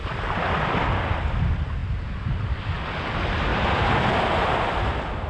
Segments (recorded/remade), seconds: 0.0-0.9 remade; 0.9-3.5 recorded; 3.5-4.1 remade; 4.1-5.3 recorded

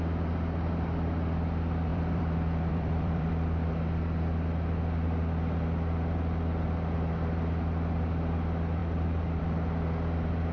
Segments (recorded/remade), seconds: 0.0-1.9 recorded; 1.9-3.3 remade; 3.3-8.8 recorded; 8.8-9.4 remade; 9.4-10.5 recorded

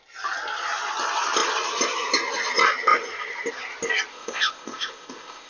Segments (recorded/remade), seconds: 0.0-4.1 recorded; 4.1-5.5 remade

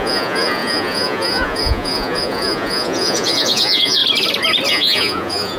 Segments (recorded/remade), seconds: 0.0-4.0 remade; 4.0-4.7 recorded; 4.7-5.6 remade

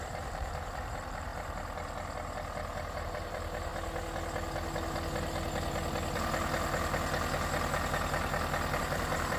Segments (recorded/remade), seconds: 0.0-1.3 remade; 1.3-3.0 recorded; 3.0-3.7 remade; 3.7-8.8 recorded; 8.8-9.4 remade

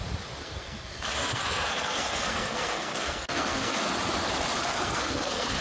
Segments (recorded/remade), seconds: 0.0-0.4 recorded; 0.4-3.8 remade; 3.8-4.7 recorded; 4.7-5.6 remade

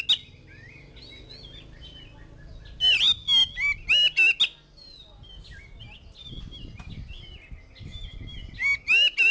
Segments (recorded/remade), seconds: 0.0-9.3 recorded